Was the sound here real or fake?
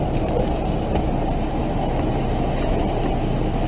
real